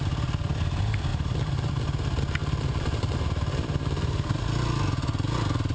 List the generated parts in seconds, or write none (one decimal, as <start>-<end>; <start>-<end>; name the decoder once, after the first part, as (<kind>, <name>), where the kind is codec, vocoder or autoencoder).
1.1-1.7 (vocoder, BigVGAN v2); 2.4-4.4